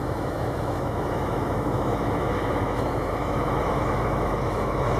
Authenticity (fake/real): fake